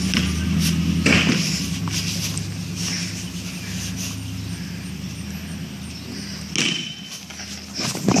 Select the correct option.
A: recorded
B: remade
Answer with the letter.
A